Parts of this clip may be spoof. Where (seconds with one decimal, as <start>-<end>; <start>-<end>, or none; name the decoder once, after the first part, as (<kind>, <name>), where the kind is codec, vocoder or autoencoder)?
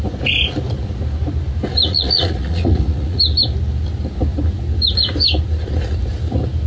1.9-3.2 (vocoder, Vocos)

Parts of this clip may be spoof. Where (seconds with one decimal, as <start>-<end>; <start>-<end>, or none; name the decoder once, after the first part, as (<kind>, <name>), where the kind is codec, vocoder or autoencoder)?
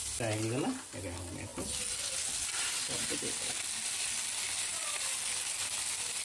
none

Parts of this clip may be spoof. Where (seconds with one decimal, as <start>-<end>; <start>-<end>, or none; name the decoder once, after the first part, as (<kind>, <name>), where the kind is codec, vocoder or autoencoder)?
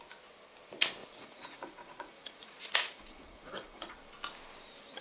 1.0-4.0 (vocoder, Vocos)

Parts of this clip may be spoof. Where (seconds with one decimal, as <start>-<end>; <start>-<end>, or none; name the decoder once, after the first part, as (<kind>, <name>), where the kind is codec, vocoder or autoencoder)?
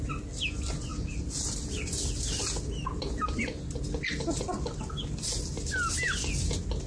none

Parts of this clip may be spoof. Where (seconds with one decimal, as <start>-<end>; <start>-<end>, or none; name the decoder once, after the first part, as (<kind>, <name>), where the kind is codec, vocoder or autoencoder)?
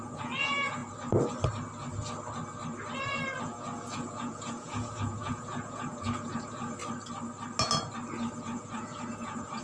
0.0-0.8 (vocoder, Vocos); 3.4-6.8; 8.3-9.6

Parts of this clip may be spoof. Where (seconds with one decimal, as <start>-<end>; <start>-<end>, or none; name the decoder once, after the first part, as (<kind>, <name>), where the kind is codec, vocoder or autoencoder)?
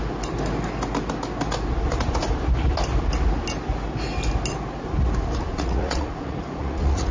5.5-7.1 (vocoder, Vocos)